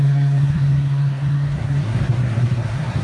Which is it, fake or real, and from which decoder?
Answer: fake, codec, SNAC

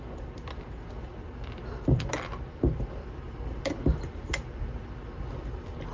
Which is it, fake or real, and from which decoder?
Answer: real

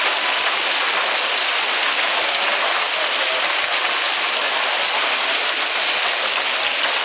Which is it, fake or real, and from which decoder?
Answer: real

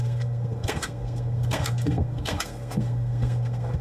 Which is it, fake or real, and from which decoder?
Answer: fake, codec, SNAC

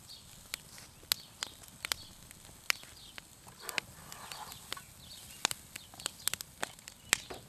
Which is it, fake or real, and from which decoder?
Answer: real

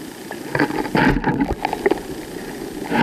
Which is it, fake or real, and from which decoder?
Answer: real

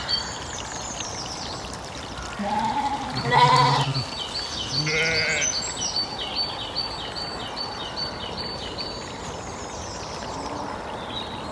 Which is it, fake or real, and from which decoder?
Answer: real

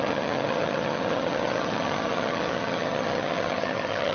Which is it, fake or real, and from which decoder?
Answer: fake, vocoder, HiFi-GAN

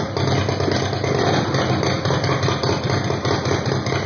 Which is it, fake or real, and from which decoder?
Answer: real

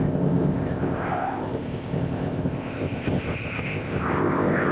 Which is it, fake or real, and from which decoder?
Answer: fake, codec, ZipCodec